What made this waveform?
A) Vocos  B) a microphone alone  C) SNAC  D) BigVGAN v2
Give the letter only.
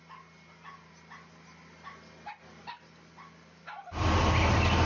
B